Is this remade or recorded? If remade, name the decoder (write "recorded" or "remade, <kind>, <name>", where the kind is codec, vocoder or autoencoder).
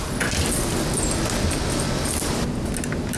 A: recorded